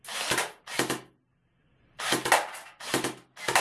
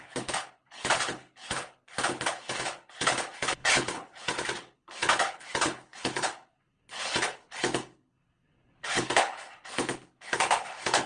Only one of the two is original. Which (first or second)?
first